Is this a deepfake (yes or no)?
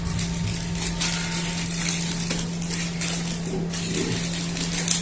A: no